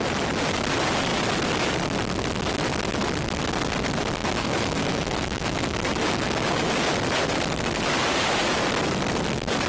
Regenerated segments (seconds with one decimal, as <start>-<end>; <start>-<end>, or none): 4.2-6.7